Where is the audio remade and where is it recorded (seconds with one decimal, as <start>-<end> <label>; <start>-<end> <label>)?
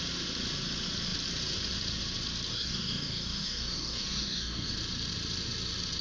0.0-2.5 recorded; 2.5-4.7 remade; 4.7-6.0 recorded